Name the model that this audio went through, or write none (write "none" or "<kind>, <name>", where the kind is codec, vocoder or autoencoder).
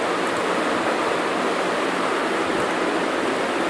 none